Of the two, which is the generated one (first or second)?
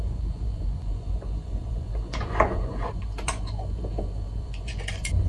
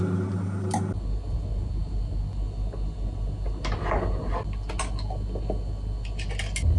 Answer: first